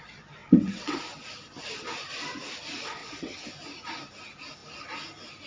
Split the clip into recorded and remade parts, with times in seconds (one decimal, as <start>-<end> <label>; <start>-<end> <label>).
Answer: 0.0-0.4 recorded; 0.4-1.0 remade; 1.0-3.0 recorded; 3.0-3.5 remade; 3.5-5.5 recorded